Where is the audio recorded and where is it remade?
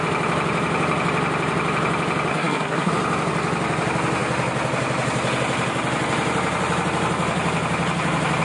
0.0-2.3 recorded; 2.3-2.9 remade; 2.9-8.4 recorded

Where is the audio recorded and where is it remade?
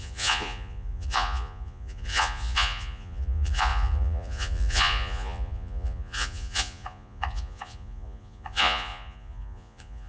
0.0-10.1 remade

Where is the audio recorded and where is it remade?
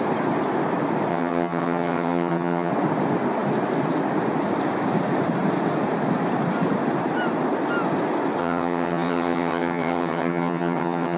0.0-1.1 recorded; 1.1-2.7 remade; 2.7-8.4 recorded; 8.4-11.2 remade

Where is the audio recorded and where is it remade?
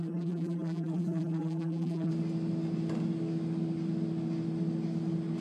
0.0-2.1 remade; 2.1-5.4 recorded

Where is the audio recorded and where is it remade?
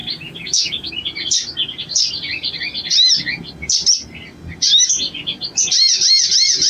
0.0-0.9 remade; 0.9-6.7 recorded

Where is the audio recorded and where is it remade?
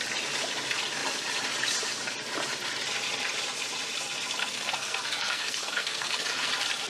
0.0-4.4 recorded; 4.4-6.5 remade; 6.5-6.9 recorded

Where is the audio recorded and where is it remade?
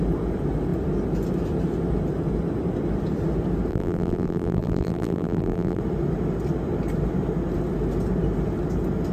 0.0-3.7 recorded; 3.7-5.8 remade; 5.8-9.1 recorded